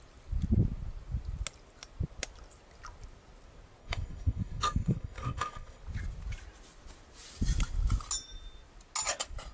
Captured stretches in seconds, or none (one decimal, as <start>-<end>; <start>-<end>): 0.0-3.8; 5.8-9.5